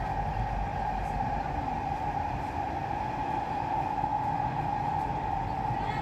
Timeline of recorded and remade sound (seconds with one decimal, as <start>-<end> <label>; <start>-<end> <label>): 0.0-6.0 recorded